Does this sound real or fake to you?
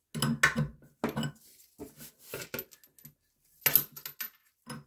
real